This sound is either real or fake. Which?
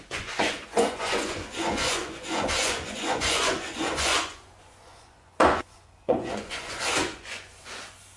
fake